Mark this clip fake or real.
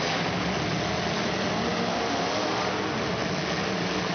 real